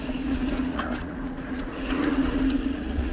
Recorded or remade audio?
remade